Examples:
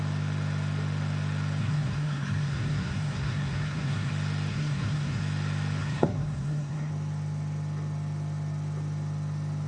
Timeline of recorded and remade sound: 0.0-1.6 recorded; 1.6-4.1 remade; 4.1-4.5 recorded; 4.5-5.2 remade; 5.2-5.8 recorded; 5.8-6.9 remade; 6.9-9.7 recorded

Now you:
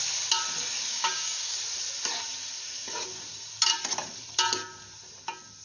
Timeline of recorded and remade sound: 0.0-0.9 recorded; 0.9-1.6 remade; 1.6-5.6 recorded

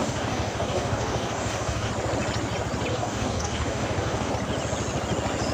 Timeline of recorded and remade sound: 0.0-1.9 remade; 1.9-2.9 recorded; 2.9-4.3 remade; 4.3-5.5 recorded

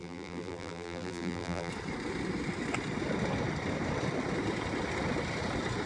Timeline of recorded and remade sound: 0.0-1.7 remade; 1.7-5.9 recorded

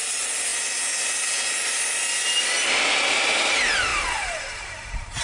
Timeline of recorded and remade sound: 0.0-3.9 recorded; 3.9-5.2 remade